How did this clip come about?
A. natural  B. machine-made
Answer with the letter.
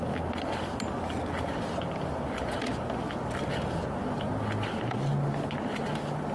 A